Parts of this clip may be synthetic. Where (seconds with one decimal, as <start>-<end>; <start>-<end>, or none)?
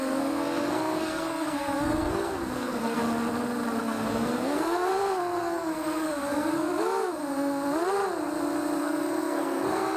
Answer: 0.0-3.0; 3.8-7.2; 8.8-10.0